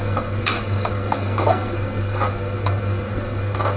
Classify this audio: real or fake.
fake